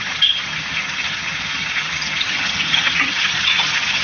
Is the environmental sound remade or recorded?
remade